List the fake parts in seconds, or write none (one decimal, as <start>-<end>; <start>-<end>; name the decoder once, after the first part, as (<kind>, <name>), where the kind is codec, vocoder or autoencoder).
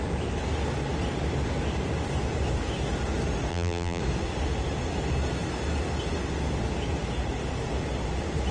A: 3.5-4.0 (vocoder, BigVGAN v2)